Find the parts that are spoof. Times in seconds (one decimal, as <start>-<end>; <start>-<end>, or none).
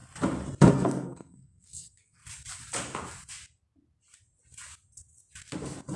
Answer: 0.7-2.2